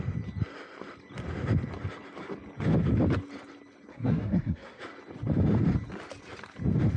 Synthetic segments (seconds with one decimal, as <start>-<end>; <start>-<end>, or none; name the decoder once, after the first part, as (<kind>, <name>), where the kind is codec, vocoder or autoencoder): 3.9-4.8 (codec, SNAC)